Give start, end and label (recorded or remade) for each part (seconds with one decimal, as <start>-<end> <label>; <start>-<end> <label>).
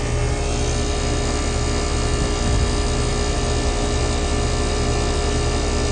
0.0-5.9 recorded